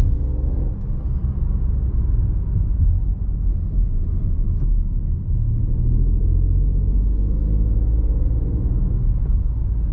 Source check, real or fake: real